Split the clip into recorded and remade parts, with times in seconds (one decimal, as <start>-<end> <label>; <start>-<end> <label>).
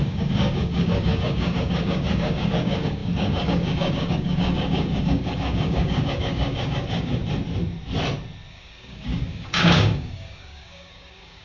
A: 0.0-7.2 remade; 7.2-8.5 recorded; 8.5-11.4 remade